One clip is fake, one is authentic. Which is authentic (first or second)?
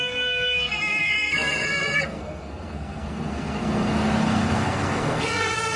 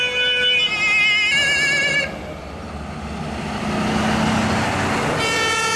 second